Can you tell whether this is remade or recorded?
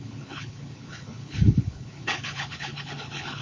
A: remade